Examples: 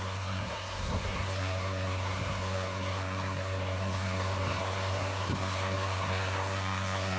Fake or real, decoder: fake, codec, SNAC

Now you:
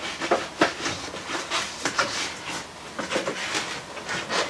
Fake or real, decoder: real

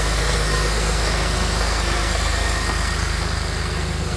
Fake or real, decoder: fake, codec, SNAC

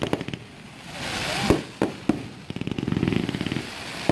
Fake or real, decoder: real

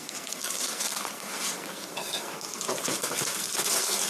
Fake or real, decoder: fake, codec, SNAC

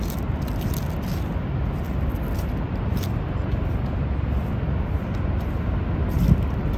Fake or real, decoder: real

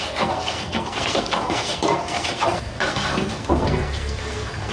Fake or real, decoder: fake, codec, SNAC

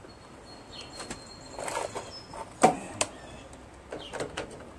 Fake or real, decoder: real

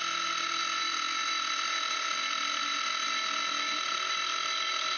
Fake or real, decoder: real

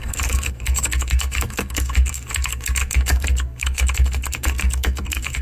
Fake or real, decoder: fake, codec, SNAC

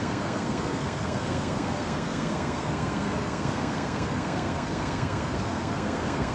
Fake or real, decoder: fake, codec, SNAC